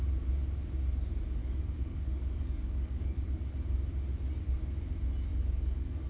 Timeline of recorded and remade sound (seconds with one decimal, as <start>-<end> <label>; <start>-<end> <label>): 0.0-1.4 recorded; 1.4-3.5 remade; 3.5-5.3 recorded; 5.3-6.1 remade